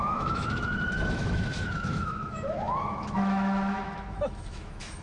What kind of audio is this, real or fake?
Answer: fake